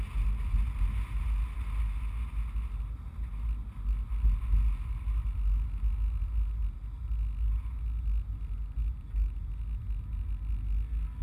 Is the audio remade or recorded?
recorded